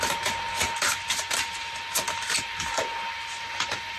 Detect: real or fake real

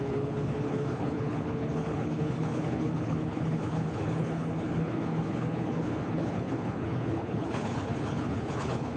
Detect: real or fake fake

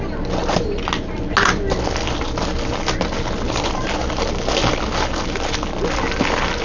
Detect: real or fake real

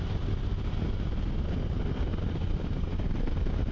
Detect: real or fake real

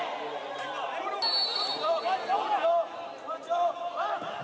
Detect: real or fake real